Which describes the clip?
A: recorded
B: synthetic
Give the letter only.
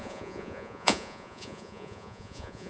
B